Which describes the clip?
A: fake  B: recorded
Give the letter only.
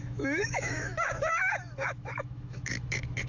A